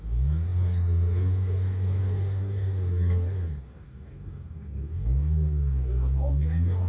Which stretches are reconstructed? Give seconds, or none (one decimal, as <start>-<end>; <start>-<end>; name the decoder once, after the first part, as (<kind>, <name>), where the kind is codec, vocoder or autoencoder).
0.0-6.9 (codec, DAC)